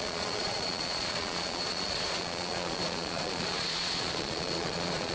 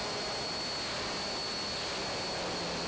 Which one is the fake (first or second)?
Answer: first